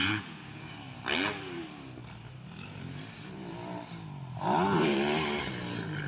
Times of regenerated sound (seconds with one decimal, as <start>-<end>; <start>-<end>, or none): 0.0-0.7